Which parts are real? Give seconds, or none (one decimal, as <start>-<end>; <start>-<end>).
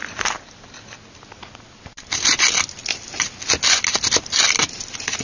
0.7-5.2